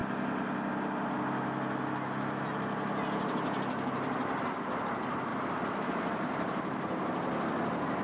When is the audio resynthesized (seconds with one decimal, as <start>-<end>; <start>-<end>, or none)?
5.3-8.0